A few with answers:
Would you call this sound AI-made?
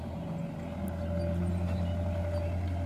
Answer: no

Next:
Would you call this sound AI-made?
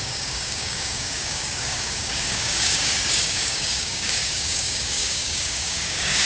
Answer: yes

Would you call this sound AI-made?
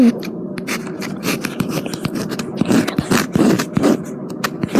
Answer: yes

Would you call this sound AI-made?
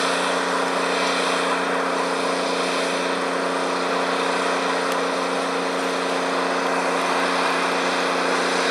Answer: no